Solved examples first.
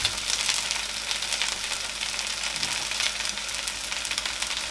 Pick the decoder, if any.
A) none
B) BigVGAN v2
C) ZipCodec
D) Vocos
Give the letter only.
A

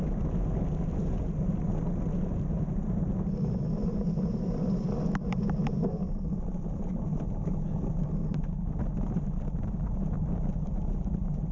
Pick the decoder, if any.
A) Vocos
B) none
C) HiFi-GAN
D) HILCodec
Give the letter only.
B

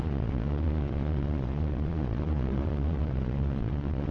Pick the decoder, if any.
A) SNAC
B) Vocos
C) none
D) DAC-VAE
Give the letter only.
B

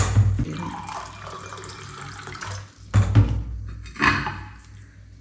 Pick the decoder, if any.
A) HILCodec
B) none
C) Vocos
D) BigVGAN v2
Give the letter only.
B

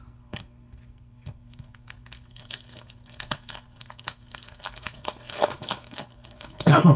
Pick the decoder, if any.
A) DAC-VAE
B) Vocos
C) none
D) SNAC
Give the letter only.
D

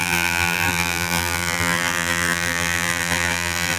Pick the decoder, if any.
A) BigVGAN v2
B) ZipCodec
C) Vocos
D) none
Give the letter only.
A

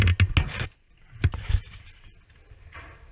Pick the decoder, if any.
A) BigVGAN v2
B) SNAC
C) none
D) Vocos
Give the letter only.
C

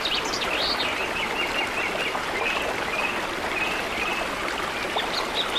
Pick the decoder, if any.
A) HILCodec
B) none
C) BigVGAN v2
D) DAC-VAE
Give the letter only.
B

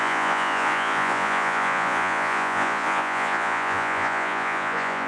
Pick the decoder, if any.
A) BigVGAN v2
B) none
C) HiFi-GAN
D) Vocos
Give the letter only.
D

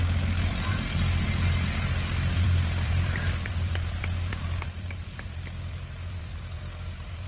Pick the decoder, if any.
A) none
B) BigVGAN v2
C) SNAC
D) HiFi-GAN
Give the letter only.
B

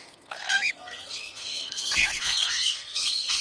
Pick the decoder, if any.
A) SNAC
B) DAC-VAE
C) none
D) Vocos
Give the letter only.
A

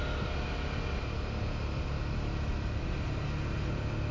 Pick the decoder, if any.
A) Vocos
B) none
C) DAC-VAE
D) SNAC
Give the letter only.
B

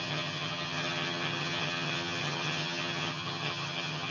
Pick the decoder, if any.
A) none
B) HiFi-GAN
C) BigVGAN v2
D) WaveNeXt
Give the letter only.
B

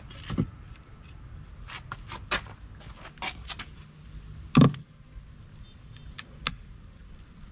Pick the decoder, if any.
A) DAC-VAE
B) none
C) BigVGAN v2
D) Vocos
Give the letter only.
B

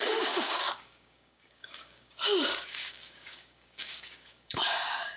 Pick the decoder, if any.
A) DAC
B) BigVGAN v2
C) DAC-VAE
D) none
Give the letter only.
A